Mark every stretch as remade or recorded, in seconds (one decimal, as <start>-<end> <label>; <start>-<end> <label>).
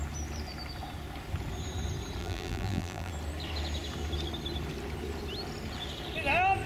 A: 0.0-2.2 recorded; 2.2-3.1 remade; 3.1-6.7 recorded